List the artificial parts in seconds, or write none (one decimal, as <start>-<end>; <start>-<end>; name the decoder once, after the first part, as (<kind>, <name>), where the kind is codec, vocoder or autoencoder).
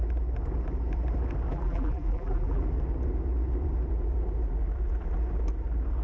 1.5-2.6 (vocoder, BigVGAN v2)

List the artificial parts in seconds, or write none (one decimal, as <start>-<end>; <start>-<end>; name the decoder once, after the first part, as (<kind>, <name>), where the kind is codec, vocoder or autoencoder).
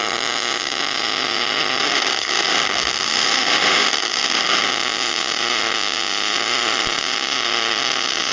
1.8-4.7 (autoencoder, DAC-VAE)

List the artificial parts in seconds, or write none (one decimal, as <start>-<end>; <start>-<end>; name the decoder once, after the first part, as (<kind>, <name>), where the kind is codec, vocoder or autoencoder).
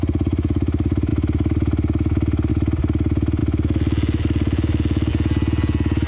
none